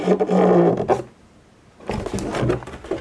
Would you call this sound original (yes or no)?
yes